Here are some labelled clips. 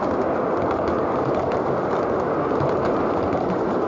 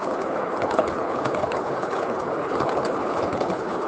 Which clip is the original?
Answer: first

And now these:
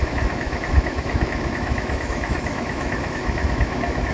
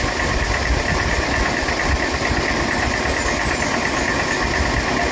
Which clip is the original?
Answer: second